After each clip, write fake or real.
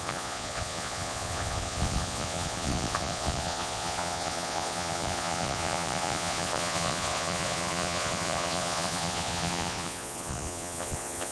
fake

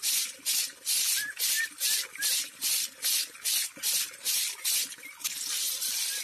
real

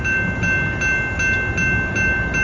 real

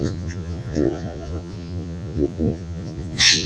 fake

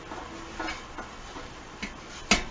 real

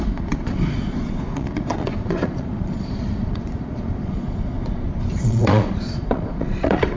fake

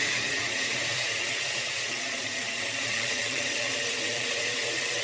fake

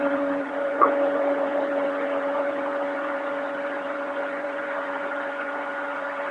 fake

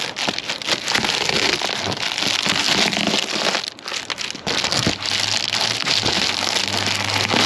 real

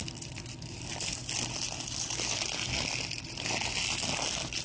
real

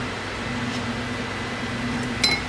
real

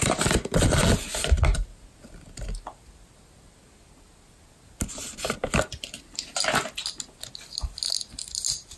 real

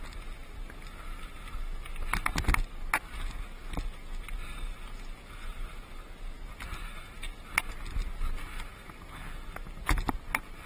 real